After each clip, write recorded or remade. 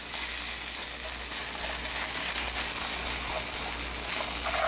recorded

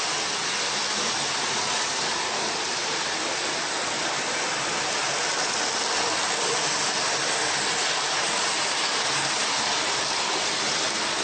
recorded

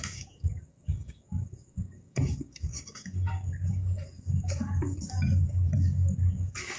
remade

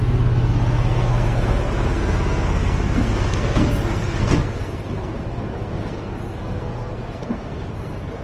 remade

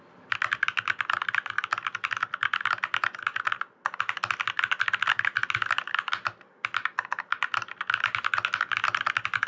recorded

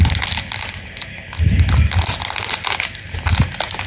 recorded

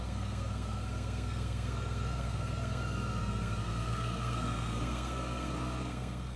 remade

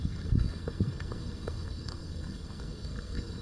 remade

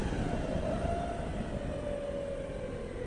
recorded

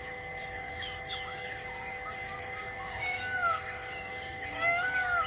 remade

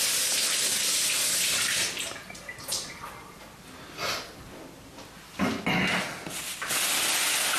recorded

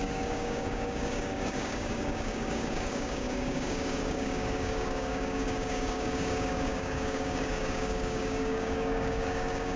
remade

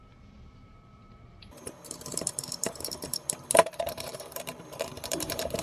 remade